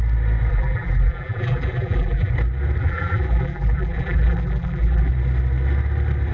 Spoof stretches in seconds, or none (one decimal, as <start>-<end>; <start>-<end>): 0.5-2.3; 2.8-5.1